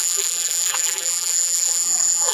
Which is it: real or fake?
fake